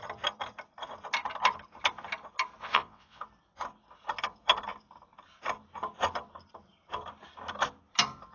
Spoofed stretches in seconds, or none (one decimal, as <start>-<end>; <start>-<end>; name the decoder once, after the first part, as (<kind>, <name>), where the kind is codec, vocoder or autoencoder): 2.6-3.2 (vocoder, WaveNeXt)